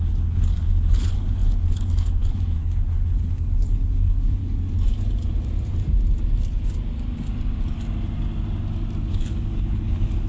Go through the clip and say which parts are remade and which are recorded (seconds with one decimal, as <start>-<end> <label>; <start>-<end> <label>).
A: 0.0-4.4 remade; 4.4-9.1 recorded; 9.1-10.3 remade